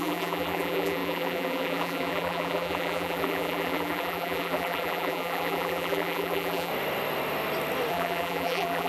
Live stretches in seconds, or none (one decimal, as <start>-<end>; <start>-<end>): 6.7-7.9